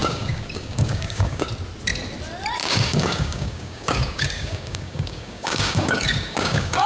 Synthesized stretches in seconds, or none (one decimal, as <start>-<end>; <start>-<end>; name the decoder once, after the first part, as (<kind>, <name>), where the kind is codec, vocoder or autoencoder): 0.0-1.5 (codec, DAC); 2.6-6.9